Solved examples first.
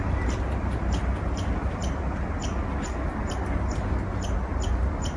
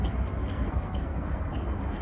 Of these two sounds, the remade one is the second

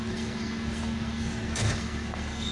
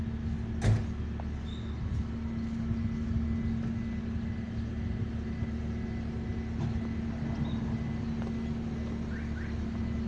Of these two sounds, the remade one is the first